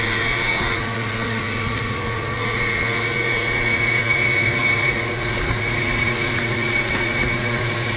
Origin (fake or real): fake